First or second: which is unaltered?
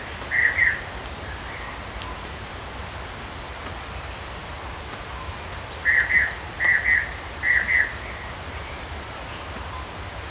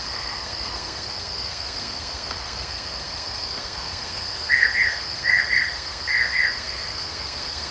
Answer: first